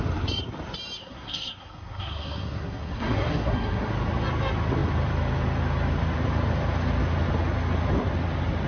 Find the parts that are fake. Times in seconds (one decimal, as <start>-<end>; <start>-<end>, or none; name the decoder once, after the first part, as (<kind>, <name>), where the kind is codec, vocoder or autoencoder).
1.0-3.9 (codec, SNAC)